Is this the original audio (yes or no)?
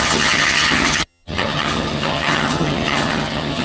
no